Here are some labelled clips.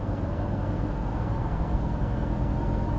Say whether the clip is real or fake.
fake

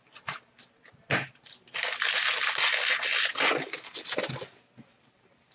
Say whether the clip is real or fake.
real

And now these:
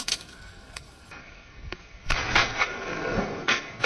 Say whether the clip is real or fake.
fake